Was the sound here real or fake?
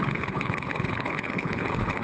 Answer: fake